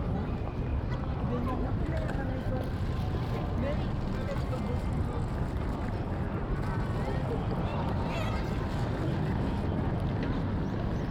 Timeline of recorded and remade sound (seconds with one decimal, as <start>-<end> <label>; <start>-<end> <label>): 0.0-11.1 recorded